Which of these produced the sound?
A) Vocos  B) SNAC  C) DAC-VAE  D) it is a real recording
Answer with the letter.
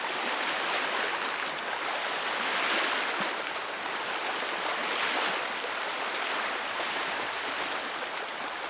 D